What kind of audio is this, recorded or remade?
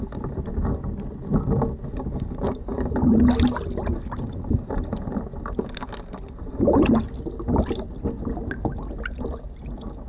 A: recorded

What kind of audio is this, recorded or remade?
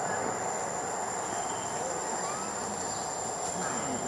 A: recorded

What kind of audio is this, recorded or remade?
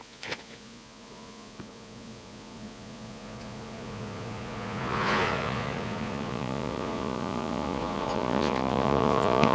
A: remade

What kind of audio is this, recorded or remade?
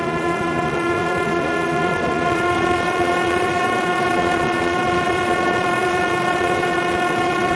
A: remade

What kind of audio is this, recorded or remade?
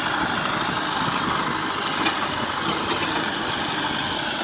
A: recorded